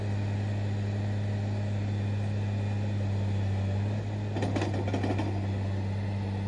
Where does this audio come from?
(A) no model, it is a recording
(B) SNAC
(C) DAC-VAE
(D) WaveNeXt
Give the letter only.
A